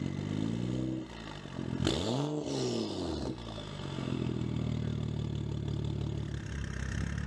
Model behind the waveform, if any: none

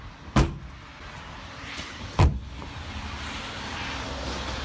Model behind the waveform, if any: none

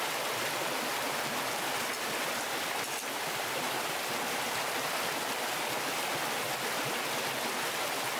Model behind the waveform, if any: none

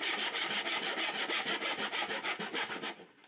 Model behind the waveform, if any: none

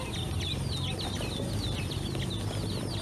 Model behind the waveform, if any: none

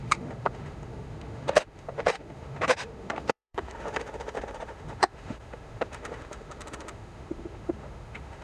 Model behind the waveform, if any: autoencoder, DAC-VAE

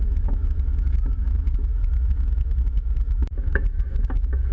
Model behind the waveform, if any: autoencoder, DAC-VAE